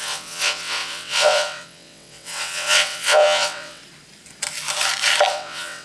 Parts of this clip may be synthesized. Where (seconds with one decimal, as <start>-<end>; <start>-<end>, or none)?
0.0-3.8; 5.3-5.8